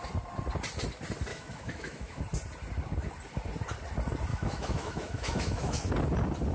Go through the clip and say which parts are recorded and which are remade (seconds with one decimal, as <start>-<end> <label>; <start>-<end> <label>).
0.0-1.3 recorded; 1.3-2.2 remade; 2.2-4.3 recorded; 4.3-5.9 remade; 5.9-6.5 recorded